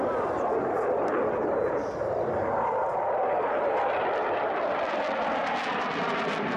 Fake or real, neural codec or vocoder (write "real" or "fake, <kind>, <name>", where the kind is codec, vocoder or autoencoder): real